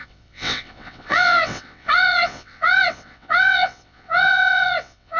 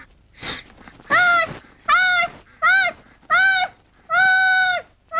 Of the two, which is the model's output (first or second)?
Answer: first